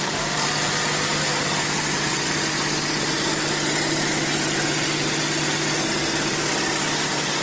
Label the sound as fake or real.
real